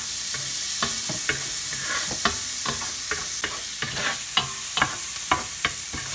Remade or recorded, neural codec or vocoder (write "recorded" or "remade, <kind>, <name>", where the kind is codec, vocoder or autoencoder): recorded